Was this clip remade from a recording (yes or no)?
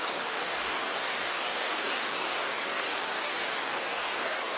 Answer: yes